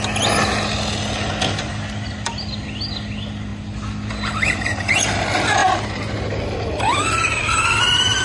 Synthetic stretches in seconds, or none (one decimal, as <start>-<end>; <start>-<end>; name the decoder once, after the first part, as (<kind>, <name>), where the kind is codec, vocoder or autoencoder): none